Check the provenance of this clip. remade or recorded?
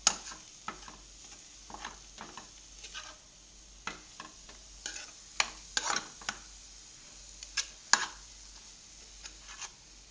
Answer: recorded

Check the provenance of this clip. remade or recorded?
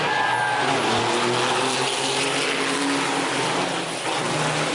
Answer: recorded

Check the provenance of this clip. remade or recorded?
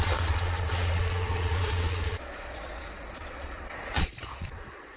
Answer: remade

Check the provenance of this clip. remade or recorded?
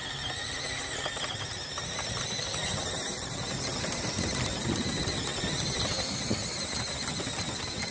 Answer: recorded